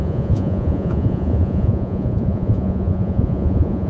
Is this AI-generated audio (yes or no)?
yes